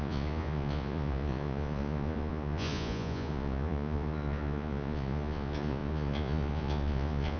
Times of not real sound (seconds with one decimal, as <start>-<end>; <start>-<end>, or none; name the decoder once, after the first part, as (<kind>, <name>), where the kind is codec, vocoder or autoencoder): 0.0-7.4 (vocoder, Vocos)